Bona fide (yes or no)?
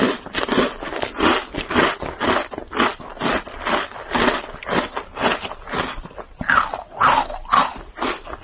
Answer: yes